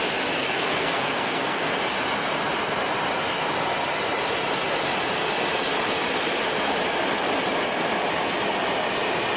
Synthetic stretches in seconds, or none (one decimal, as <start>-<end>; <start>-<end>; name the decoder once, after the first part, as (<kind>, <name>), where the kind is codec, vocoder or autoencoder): 0.4-1.6 (codec, SNAC)